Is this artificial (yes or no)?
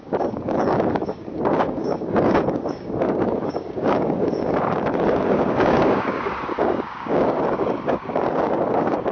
yes